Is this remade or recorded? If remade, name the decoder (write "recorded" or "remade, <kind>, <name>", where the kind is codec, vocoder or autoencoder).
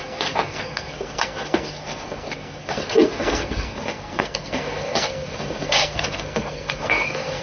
remade, codec, SNAC